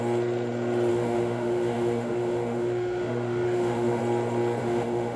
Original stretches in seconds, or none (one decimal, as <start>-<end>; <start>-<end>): 0.0-0.9; 4.0-4.6